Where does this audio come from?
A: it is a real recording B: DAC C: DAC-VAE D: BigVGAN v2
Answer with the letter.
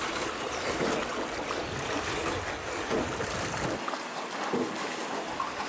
A